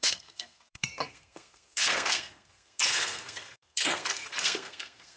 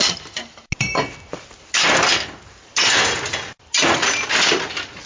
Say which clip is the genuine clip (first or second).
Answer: second